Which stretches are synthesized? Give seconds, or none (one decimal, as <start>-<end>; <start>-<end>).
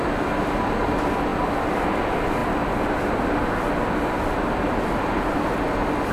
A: none